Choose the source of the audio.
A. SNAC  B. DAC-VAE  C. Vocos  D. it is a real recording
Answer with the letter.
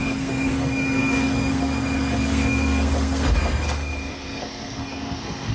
A